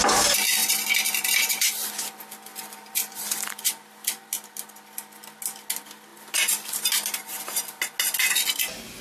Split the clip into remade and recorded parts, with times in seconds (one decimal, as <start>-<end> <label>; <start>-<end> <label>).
0.0-0.6 recorded; 0.6-1.7 remade; 1.7-2.5 recorded; 2.5-3.7 remade; 3.7-9.0 recorded